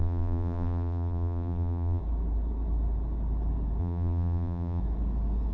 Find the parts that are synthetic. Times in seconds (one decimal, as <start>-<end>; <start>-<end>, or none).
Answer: 0.0-2.0; 3.8-4.8